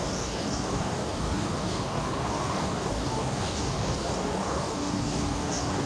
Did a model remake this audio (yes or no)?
yes